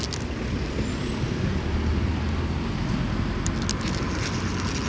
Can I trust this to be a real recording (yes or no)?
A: yes